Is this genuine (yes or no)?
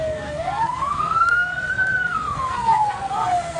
no